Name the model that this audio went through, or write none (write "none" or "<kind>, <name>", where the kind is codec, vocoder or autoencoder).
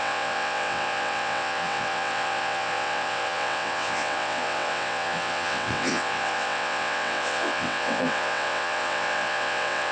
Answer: vocoder, WaveNeXt